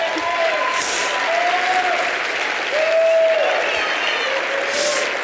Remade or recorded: recorded